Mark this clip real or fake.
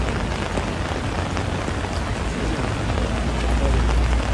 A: real